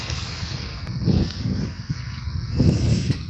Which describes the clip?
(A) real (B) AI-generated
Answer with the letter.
B